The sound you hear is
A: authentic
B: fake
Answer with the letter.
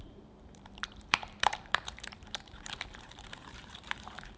B